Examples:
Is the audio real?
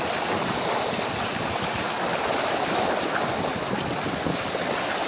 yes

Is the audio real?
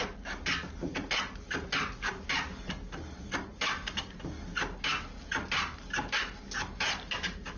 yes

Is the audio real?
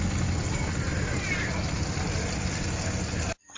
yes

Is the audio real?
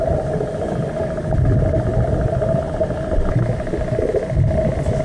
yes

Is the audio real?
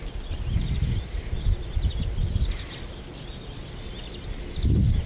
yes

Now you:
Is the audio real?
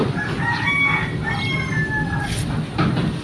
yes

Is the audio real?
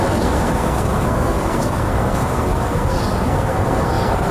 no